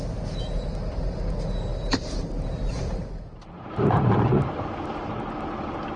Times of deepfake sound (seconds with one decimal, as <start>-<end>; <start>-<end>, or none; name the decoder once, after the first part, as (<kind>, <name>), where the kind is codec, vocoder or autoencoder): 1.7-4.7 (vocoder, BigVGAN v2)